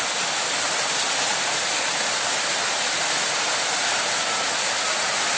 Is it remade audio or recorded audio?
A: recorded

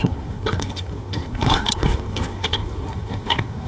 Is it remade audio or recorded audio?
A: remade